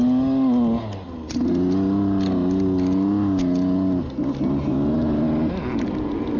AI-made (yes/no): no